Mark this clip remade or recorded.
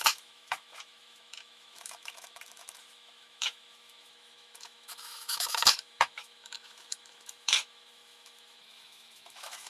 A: remade